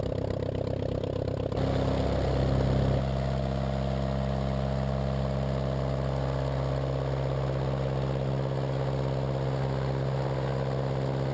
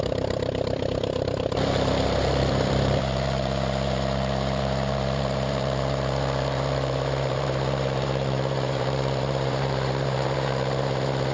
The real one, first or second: first